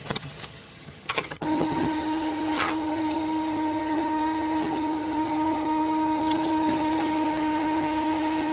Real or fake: fake